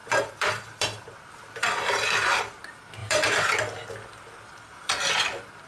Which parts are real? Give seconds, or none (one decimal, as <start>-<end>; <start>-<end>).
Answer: 2.5-3.0; 3.5-5.7